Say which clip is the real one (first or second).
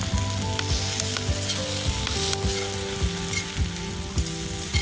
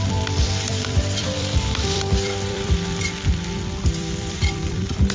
first